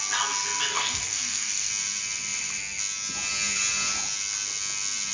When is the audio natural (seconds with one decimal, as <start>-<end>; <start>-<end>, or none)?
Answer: 0.0-0.7; 1.7-5.1